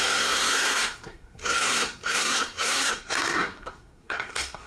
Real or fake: fake